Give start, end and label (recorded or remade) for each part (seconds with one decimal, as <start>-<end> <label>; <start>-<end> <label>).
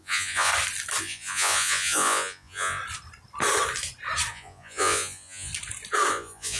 0.0-0.5 remade; 0.5-1.0 recorded; 1.0-2.8 remade; 2.8-4.3 recorded; 4.3-5.5 remade; 5.5-6.1 recorded; 6.1-6.6 remade